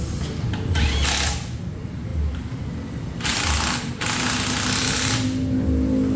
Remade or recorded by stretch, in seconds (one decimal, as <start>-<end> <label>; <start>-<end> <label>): 0.0-2.1 recorded; 2.1-2.6 remade; 2.6-3.3 recorded; 3.3-3.9 remade; 3.9-6.2 recorded